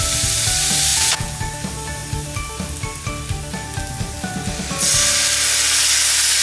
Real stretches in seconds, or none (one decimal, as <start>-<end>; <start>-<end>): 0.0-0.9; 1.4-6.4